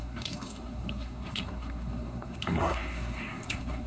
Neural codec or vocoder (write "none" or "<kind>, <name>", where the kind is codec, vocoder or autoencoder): codec, SNAC